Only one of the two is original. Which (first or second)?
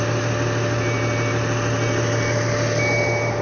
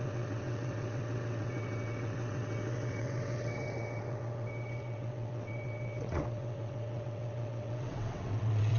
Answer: first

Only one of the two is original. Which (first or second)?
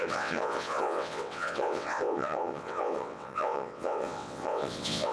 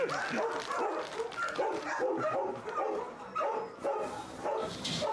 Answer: second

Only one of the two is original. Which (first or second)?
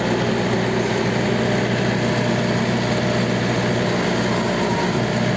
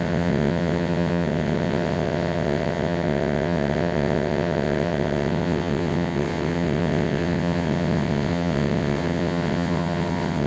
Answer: first